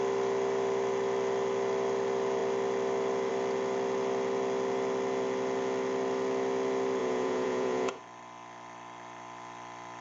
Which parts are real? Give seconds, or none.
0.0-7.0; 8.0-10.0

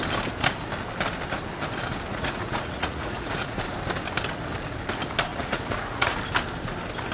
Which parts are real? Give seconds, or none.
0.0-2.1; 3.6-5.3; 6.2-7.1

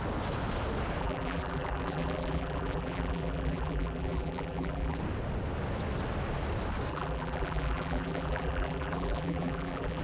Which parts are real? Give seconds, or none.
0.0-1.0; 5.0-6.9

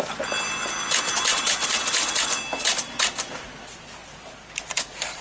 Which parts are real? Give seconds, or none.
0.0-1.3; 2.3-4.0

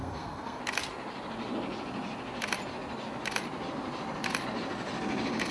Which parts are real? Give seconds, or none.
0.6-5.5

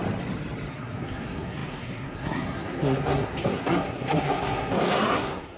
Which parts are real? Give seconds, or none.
0.0-0.7

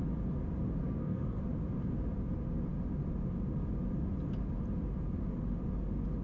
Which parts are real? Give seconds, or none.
0.0-0.8; 1.4-6.2

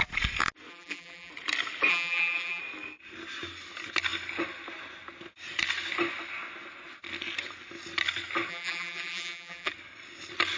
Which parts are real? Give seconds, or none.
0.0-0.7; 1.3-1.9; 2.6-8.5; 9.7-10.6